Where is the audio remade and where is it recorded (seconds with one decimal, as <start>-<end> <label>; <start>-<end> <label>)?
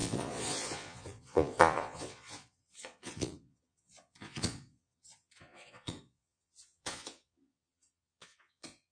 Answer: 0.0-8.9 remade